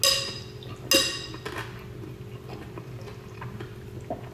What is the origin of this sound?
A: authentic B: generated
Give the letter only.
A